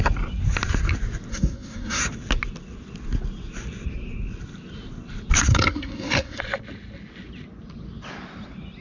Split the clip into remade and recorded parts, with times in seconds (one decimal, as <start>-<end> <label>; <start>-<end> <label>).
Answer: 0.0-1.3 recorded; 1.3-2.0 remade; 2.0-5.5 recorded; 5.5-6.4 remade; 6.4-8.8 recorded